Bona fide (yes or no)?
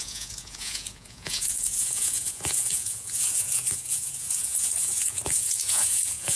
no